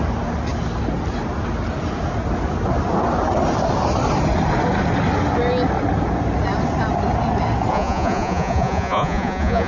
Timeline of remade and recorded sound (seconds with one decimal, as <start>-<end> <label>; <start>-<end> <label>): 0.0-7.7 recorded; 7.7-9.7 remade